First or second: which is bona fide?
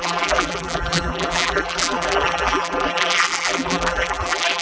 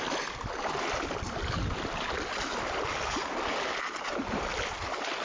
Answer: second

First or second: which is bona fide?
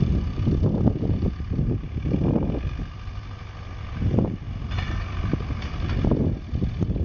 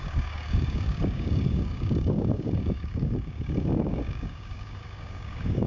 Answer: first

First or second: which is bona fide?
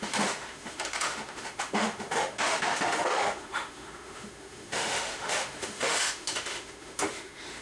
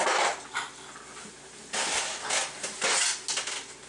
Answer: second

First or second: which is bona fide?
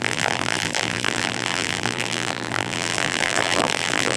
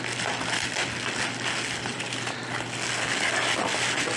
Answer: second